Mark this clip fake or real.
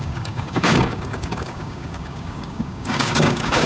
fake